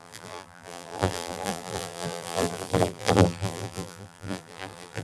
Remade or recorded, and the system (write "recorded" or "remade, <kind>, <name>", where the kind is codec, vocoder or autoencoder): remade, vocoder, BigVGAN v2